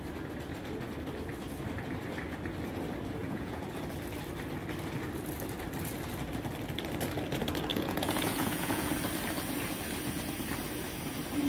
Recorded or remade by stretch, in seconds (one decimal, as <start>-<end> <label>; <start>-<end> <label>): 0.0-3.2 recorded; 3.2-3.7 remade; 3.7-7.7 recorded; 7.7-8.9 remade; 8.9-11.5 recorded